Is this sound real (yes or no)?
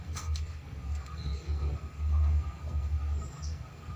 no